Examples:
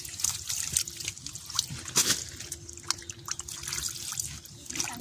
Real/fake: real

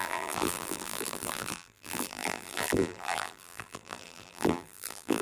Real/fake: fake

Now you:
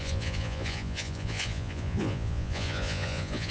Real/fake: fake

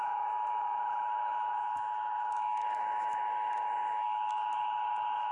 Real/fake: fake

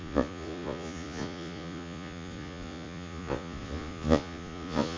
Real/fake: fake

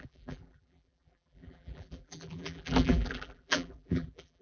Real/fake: fake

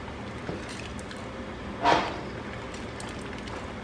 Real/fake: real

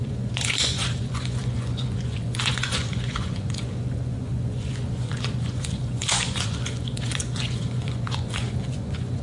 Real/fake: fake